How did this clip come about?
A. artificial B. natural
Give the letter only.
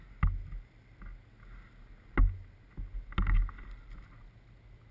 B